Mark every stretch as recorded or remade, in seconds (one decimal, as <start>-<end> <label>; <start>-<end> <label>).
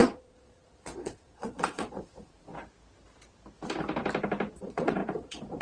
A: 0.0-2.5 remade; 2.5-4.6 recorded; 4.6-5.6 remade